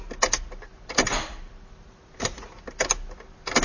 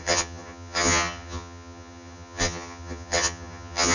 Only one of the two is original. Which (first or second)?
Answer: first